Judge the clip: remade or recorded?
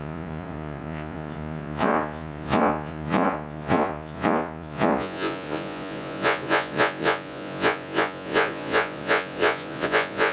remade